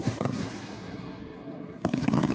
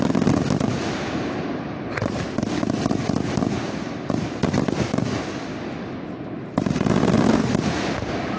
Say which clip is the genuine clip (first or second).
second